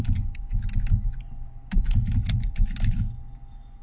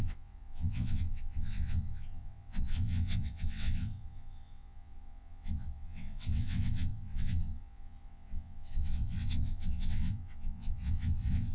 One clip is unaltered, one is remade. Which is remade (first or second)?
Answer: second